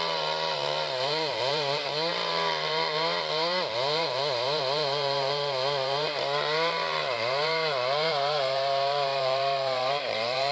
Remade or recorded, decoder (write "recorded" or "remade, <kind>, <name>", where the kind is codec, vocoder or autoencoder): remade, vocoder, BigVGAN v2